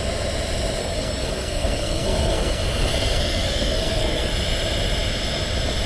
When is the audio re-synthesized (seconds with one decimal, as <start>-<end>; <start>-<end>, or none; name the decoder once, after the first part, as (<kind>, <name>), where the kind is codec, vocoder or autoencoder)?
0.8-4.3 (codec, SNAC)